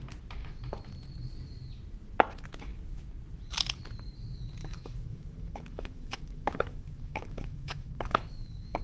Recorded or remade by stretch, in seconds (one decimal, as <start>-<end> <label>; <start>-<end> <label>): 0.0-0.4 recorded; 0.4-0.9 remade; 0.9-4.6 recorded; 4.6-8.8 remade